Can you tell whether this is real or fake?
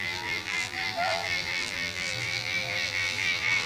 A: fake